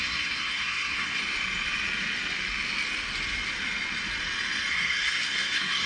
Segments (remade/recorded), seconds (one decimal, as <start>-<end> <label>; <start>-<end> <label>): 0.0-1.2 remade; 1.2-4.7 recorded; 4.7-5.9 remade